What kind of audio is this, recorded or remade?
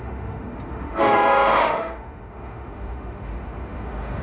remade